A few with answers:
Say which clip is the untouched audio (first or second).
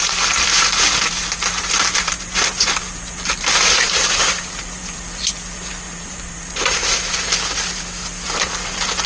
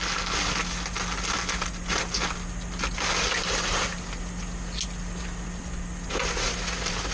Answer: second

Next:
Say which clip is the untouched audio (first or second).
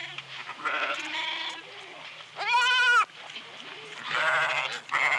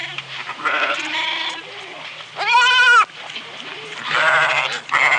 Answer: first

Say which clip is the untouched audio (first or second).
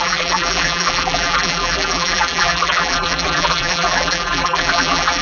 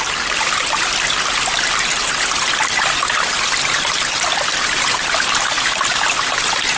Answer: second